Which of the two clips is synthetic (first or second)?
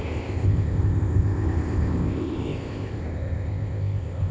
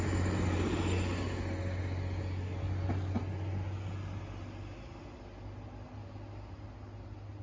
first